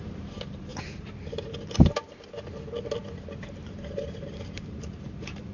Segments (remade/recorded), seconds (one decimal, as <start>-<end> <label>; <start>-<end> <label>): 0.0-0.7 remade; 0.7-3.9 recorded; 3.9-5.5 remade